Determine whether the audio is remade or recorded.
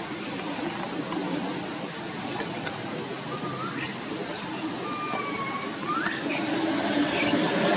recorded